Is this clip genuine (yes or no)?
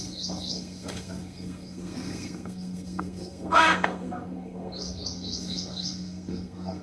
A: no